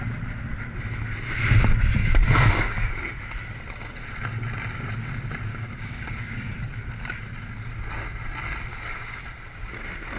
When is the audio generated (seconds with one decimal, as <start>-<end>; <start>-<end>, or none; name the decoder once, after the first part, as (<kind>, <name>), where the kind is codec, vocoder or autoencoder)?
2.0-2.9 (codec, DAC); 5.5-6.5; 8.7-9.2